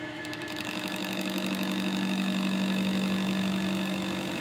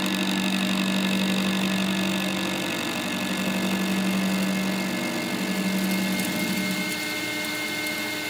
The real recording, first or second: second